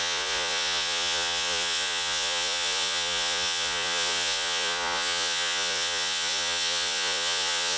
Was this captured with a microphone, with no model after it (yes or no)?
no